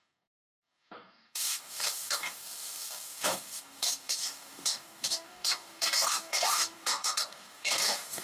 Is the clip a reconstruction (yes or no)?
yes